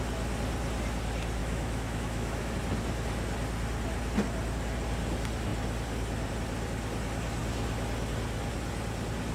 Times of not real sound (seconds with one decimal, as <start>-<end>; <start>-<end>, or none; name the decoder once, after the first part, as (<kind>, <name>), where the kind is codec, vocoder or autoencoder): 1.4-2.5 (autoencoder, DAC-VAE)